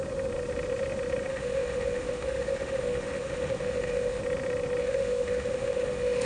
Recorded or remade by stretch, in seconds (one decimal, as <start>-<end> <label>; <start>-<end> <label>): 0.0-1.3 recorded; 1.3-4.2 remade; 4.2-4.8 recorded; 4.8-6.3 remade

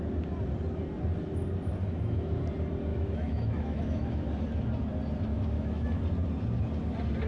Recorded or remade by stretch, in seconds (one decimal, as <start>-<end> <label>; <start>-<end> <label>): 0.0-1.8 recorded; 1.8-2.4 remade; 2.4-2.9 recorded; 2.9-4.3 remade; 4.3-5.3 recorded; 5.3-6.0 remade; 6.0-7.3 recorded

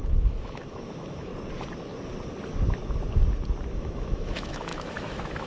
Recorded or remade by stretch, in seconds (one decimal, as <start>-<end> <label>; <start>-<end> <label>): 0.0-1.3 remade; 1.3-3.7 recorded; 3.7-5.5 remade

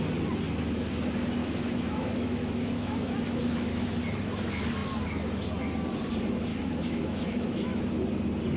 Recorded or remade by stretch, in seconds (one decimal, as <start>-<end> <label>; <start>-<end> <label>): 0.0-1.4 recorded; 1.4-4.0 remade; 4.0-6.5 recorded; 6.5-7.8 remade; 7.8-8.6 recorded

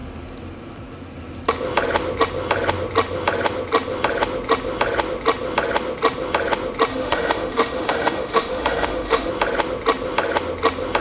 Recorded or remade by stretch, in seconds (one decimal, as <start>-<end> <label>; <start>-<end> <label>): 0.0-6.9 recorded; 6.9-9.3 remade; 9.3-11.0 recorded